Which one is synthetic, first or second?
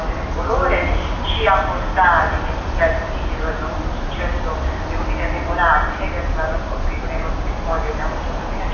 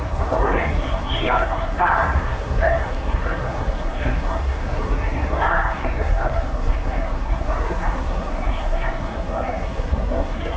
second